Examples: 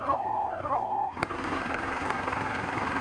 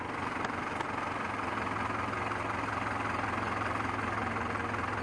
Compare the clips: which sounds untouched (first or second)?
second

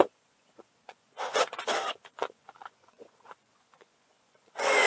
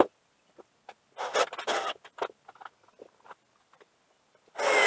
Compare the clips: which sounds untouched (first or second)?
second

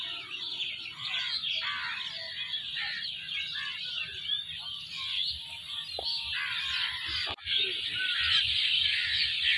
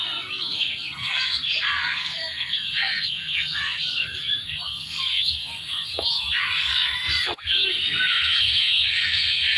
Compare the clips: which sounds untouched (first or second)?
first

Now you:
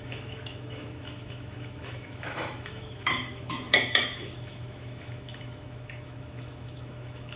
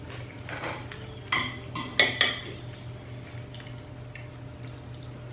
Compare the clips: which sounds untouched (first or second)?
second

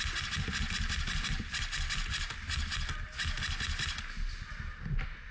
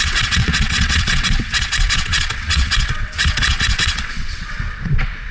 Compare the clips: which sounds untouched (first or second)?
first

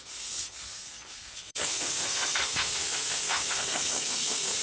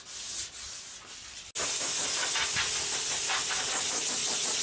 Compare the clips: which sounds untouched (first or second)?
second